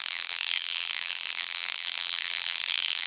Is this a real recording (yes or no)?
no